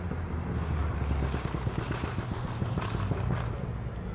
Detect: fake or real real